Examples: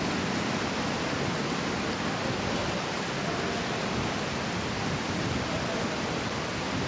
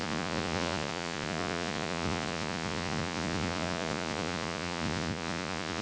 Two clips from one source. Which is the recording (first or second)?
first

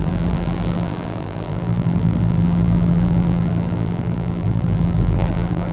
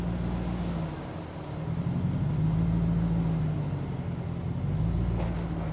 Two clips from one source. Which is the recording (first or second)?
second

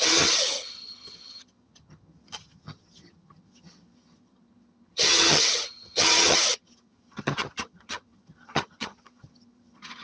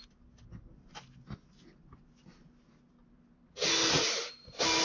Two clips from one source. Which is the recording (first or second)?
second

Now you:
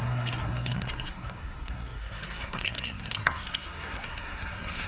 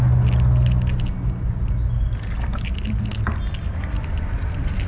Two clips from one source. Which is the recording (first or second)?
second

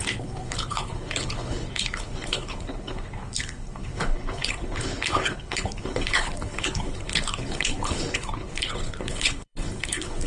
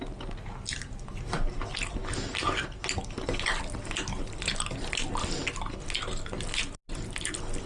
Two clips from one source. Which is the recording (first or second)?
second